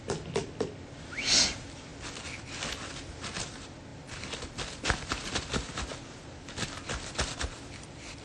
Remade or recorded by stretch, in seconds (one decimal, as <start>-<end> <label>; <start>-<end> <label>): 0.0-8.2 recorded